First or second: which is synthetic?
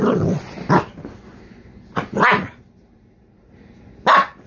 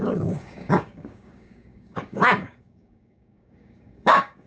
second